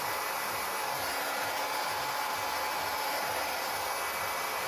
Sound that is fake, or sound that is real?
real